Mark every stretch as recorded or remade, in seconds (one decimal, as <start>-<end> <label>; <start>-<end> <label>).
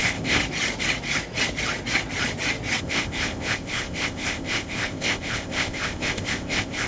0.0-0.4 remade; 0.4-2.8 recorded; 2.8-6.9 remade